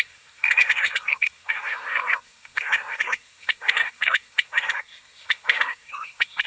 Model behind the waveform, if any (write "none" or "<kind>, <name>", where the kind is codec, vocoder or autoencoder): codec, SNAC